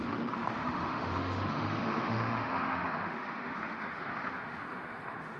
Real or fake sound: fake